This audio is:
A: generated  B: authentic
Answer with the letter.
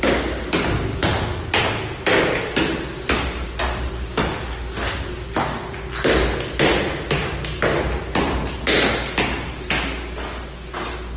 B